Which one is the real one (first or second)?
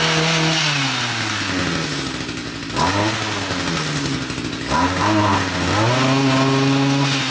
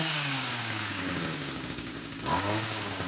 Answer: first